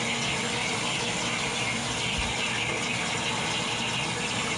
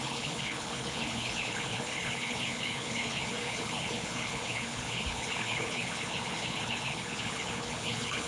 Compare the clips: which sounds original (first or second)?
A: first